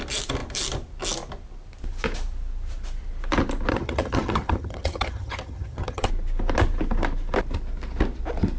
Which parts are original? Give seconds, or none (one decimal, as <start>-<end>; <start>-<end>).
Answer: 0.0-3.7; 6.1-8.6